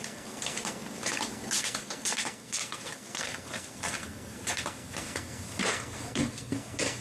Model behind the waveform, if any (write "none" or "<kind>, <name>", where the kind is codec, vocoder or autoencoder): codec, SNAC